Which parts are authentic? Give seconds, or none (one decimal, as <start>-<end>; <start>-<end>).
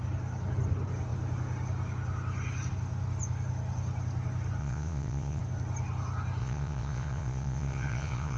0.0-4.6; 5.4-6.4